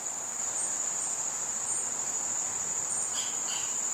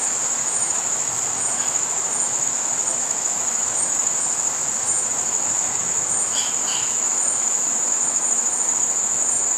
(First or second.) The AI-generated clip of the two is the second